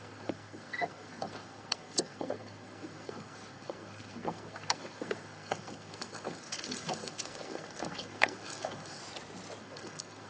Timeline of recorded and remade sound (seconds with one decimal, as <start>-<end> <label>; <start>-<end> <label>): 0.0-9.0 remade; 9.0-9.6 recorded; 9.6-10.3 remade